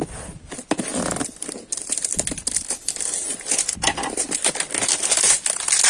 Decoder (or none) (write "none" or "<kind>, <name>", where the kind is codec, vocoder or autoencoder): none